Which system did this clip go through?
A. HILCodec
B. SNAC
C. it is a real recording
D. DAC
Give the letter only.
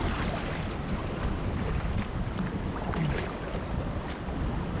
C